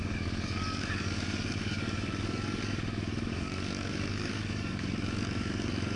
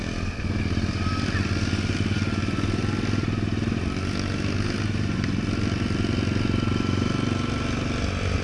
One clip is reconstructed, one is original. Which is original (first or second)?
second